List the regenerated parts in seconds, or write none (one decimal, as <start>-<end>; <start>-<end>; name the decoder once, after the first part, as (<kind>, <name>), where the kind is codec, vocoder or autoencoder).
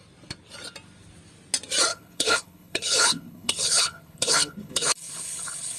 1.9-5.8 (codec, HILCodec)